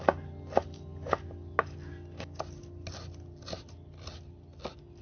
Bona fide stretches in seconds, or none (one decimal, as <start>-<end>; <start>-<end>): 0.0-5.0